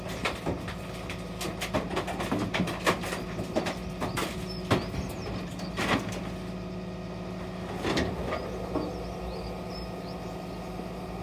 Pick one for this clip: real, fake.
real